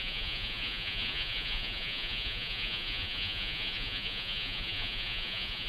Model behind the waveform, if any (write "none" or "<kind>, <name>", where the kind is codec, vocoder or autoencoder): vocoder, Vocos